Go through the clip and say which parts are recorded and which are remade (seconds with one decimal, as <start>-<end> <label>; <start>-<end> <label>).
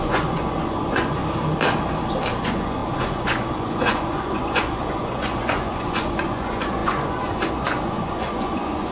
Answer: 0.0-1.2 remade; 1.2-2.4 recorded; 2.4-8.9 remade